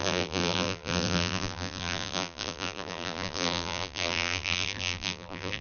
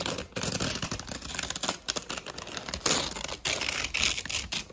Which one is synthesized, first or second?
first